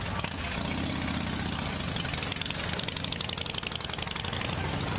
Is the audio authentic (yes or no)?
yes